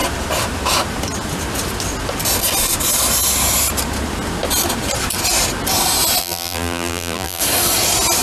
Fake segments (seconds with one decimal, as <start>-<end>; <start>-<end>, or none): 6.2-7.4